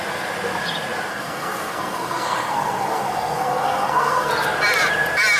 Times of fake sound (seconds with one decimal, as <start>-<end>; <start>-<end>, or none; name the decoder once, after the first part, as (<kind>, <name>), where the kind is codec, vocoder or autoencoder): 1.1-4.3 (codec, SNAC)